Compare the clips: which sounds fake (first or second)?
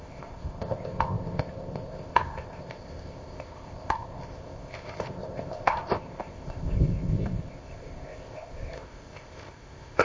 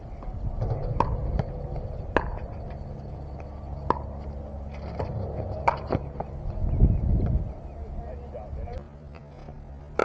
first